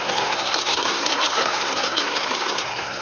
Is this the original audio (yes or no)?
no